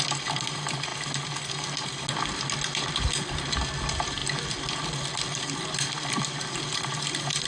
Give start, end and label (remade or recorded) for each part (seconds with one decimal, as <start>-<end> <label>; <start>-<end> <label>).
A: 0.0-7.5 recorded